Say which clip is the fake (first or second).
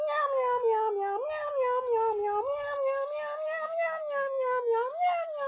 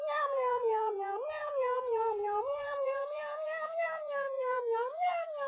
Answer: second